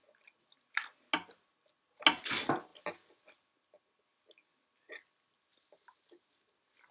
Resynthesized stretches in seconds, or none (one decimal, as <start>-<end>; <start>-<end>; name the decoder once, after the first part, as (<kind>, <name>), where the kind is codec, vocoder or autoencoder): none